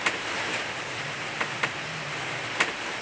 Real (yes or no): no